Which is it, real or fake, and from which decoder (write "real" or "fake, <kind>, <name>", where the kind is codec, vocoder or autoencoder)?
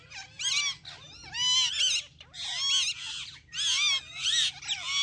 real